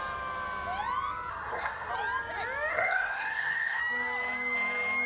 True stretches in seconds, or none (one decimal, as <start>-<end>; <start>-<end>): 0.0-1.3; 1.9-2.7; 3.8-5.1